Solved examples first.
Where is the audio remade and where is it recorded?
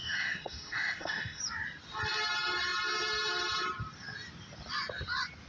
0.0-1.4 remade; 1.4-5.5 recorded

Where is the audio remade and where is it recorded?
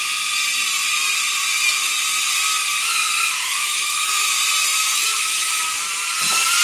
0.0-3.5 recorded; 3.5-4.3 remade; 4.3-4.7 recorded; 4.7-5.6 remade; 5.6-6.6 recorded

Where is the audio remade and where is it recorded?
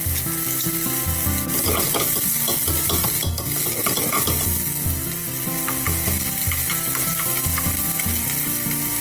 0.0-9.0 recorded